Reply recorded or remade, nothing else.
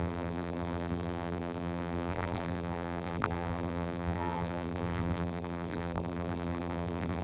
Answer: remade